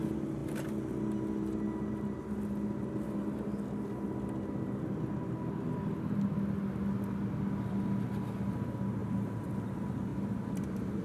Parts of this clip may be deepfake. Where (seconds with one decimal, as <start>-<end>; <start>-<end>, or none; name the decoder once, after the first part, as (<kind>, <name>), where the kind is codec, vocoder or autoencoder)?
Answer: 9.0-9.5 (vocoder, BigVGAN v2); 10.1-11.0